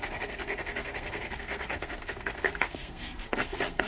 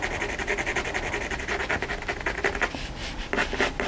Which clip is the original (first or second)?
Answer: second